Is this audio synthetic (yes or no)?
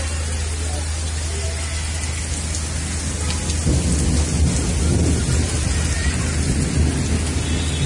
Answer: no